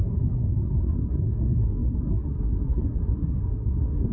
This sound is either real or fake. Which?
fake